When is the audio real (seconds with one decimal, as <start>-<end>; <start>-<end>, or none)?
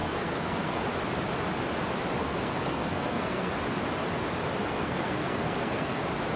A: 0.8-2.2; 3.5-4.6; 6.0-6.4